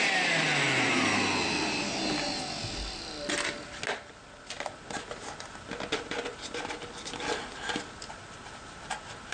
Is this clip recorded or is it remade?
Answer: recorded